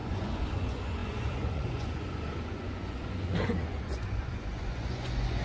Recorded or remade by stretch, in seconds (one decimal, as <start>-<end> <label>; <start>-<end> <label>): 0.0-5.4 remade